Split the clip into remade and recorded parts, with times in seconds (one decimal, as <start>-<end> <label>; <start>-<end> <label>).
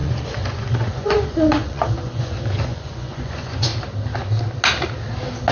0.0-3.7 remade; 3.7-5.5 recorded